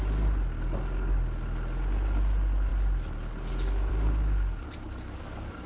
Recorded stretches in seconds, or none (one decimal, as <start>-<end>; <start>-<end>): 0.0-5.7